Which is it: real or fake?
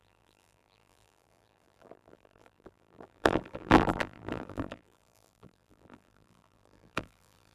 fake